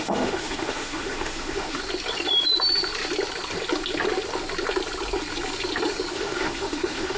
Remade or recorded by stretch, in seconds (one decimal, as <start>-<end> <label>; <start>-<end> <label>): 0.0-1.8 remade; 1.8-6.1 recorded; 6.1-7.2 remade